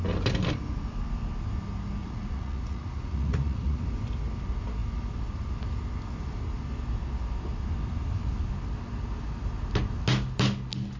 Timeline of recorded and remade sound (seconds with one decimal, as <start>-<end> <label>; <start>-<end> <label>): 0.0-2.0 recorded; 2.0-3.8 remade; 3.8-11.0 recorded